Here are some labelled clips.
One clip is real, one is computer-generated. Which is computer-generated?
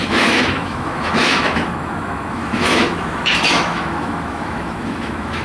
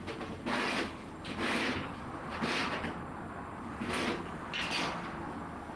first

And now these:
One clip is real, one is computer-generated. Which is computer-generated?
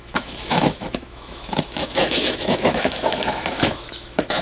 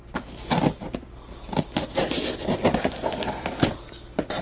first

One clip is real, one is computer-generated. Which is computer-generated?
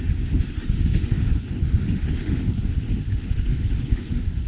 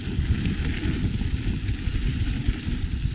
first